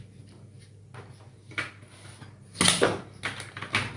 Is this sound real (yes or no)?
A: yes